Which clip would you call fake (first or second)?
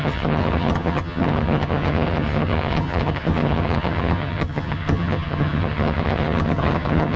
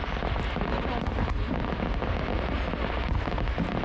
first